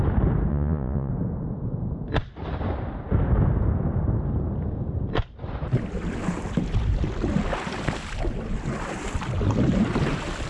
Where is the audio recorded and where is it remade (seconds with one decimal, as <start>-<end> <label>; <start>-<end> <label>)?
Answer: 0.0-0.5 recorded; 0.5-1.1 remade; 1.1-10.5 recorded